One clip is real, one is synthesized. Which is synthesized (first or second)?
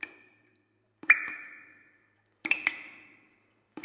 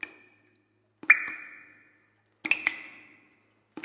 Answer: first